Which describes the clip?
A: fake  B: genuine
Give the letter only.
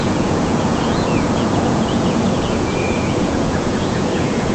A